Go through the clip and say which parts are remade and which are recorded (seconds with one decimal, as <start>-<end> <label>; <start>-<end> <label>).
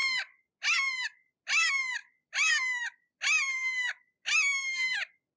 0.0-5.4 recorded